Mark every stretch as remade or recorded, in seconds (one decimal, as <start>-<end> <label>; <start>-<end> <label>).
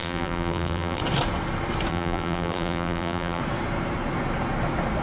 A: 0.0-1.0 remade; 1.0-1.9 recorded; 1.9-3.4 remade; 3.4-5.0 recorded